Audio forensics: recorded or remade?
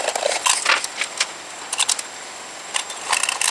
recorded